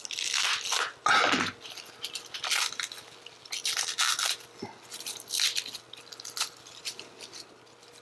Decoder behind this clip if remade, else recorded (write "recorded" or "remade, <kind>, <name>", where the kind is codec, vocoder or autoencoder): recorded